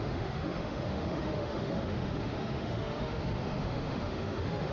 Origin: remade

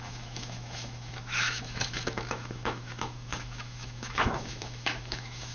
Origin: remade